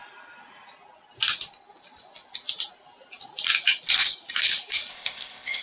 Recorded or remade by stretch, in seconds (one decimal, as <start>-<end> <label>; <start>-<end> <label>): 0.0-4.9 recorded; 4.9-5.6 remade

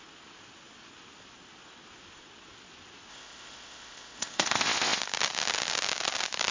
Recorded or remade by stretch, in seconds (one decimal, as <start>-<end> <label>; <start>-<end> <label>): 0.0-3.1 recorded; 3.1-5.0 remade; 5.0-6.5 recorded

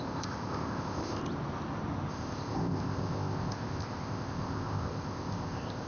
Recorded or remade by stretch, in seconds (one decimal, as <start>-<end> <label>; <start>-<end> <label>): 0.0-1.2 remade; 1.2-2.1 recorded; 2.1-5.9 remade